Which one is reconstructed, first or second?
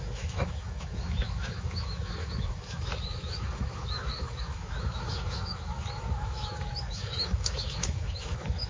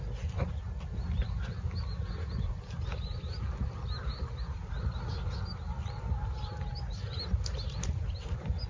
first